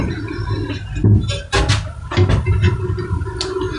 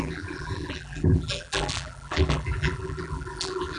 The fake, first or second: second